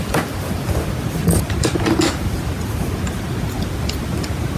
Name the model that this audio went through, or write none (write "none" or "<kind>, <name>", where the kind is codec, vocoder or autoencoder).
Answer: none